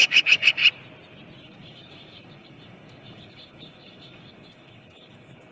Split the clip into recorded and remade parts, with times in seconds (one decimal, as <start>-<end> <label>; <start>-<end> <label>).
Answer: 0.0-0.6 remade; 0.6-1.4 recorded; 1.4-5.5 remade